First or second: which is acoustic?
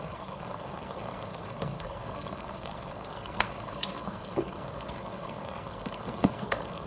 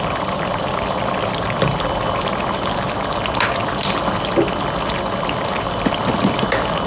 second